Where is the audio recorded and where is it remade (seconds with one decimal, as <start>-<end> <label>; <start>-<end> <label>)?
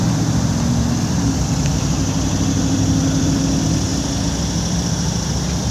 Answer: 0.0-1.7 remade; 1.7-2.6 recorded; 2.6-3.9 remade; 3.9-4.7 recorded; 4.7-5.7 remade